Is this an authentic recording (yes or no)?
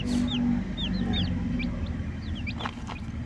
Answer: yes